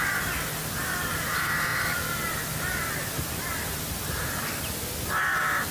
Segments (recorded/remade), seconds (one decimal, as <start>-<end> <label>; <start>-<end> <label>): 0.0-5.7 recorded